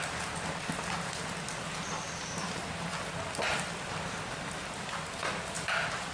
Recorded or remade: recorded